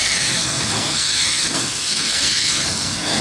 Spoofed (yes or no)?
yes